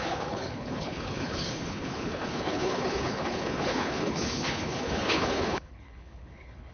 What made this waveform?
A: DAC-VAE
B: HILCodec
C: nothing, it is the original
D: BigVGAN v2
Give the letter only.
B